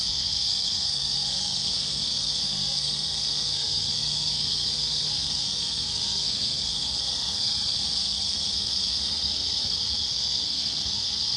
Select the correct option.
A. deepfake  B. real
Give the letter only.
A